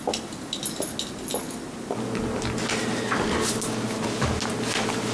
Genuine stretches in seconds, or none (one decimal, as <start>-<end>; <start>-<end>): 0.0-5.1